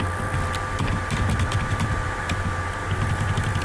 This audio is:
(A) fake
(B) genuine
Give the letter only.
B